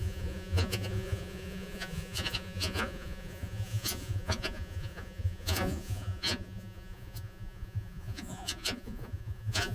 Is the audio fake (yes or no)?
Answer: yes